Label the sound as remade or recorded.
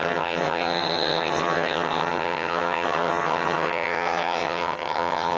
remade